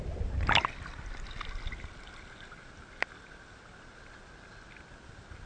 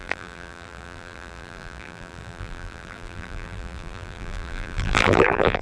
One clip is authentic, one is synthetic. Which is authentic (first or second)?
first